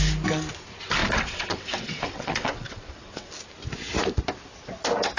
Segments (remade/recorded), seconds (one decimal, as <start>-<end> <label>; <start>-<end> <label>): 0.0-1.0 recorded; 1.0-3.3 remade; 3.3-5.2 recorded